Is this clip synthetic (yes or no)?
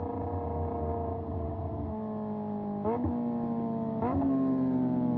no